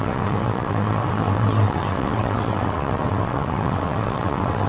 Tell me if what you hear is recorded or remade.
remade